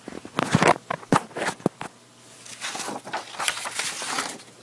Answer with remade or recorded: recorded